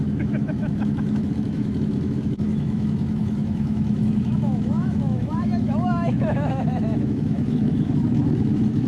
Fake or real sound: fake